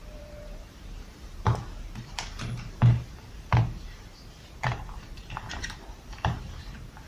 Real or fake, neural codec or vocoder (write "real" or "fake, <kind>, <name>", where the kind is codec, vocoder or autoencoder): fake, vocoder, BigVGAN v2